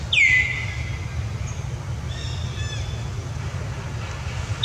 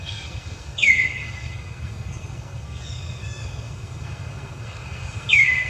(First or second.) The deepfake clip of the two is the second